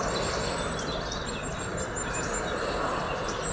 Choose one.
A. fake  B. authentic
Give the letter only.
B